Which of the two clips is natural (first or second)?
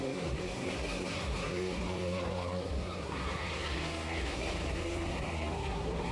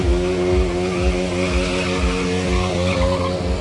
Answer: second